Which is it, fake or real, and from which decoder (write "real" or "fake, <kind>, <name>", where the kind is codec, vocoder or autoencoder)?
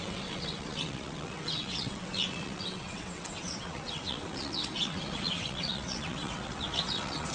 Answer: fake, vocoder, WaveNeXt